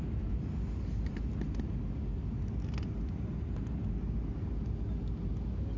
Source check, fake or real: real